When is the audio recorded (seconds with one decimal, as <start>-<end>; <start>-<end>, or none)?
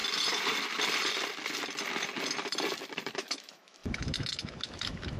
0.0-3.1